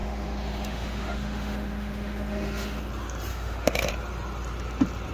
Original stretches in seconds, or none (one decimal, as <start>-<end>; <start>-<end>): 2.8-3.3; 3.9-5.1